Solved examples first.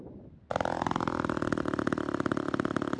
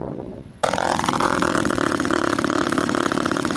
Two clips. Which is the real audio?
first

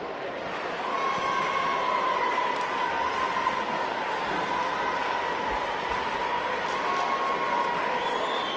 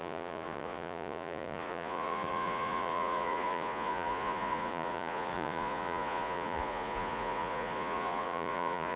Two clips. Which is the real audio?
first